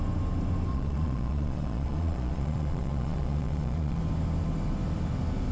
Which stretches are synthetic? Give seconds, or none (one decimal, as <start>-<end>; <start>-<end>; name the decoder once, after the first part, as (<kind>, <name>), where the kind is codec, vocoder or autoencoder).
0.7-4.0 (vocoder, Vocos)